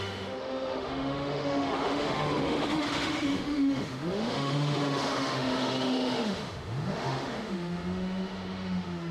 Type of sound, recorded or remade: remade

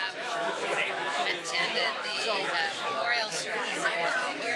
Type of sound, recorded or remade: remade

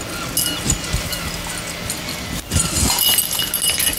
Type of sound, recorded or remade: recorded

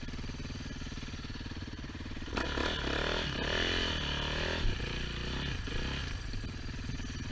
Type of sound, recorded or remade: recorded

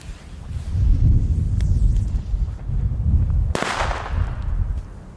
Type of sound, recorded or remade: recorded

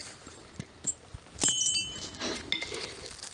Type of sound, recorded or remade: recorded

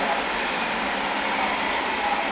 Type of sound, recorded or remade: recorded